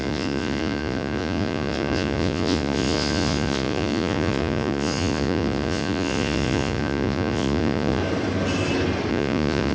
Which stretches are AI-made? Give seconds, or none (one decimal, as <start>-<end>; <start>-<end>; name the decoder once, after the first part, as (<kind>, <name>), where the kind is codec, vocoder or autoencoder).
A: 0.0-8.0 (vocoder, Vocos); 9.1-9.7

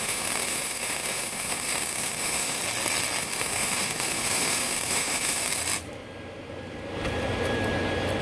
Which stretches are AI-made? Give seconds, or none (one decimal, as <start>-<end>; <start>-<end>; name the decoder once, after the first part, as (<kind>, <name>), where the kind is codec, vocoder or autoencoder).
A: 0.0-2.6 (autoencoder, DAC-VAE); 3.2-5.6